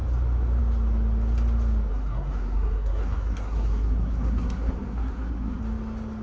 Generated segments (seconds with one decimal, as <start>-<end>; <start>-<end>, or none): 1.9-5.6